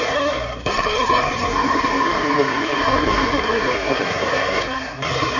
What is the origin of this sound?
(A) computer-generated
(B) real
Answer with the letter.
A